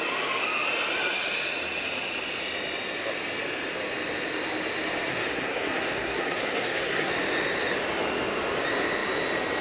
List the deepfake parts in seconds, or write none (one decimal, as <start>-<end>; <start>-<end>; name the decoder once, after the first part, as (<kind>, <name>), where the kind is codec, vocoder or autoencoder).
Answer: 5.1-7.1 (codec, SNAC)